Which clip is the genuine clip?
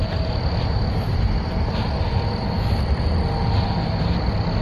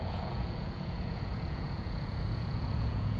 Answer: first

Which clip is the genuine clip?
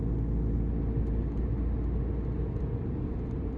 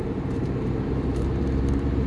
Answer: first